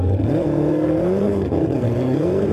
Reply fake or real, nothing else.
fake